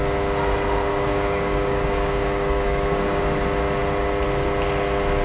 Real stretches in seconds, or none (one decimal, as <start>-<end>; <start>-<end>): 0.0-0.9; 3.2-5.2